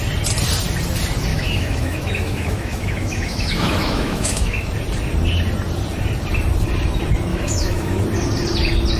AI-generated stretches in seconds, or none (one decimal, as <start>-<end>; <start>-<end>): 1.3-4.7; 7.3-8.0

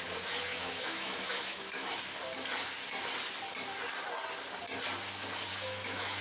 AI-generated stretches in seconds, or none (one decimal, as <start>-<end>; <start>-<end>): 0.5-2.0; 5.5-6.2

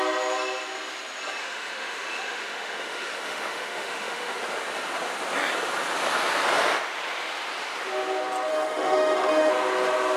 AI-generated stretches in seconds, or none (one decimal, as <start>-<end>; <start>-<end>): 1.4-4.4; 8.5-9.5

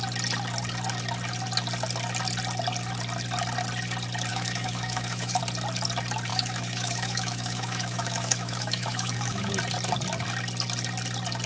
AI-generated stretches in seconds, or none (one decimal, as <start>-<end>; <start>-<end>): 4.3-5.4; 6.3-9.5

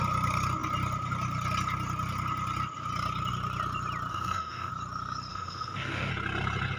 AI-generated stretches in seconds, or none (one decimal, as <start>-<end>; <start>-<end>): 4.1-4.7; 5.3-6.1

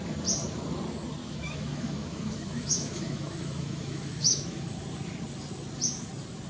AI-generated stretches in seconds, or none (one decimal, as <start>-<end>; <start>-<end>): 1.2-4.8